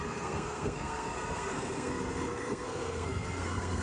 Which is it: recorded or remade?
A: remade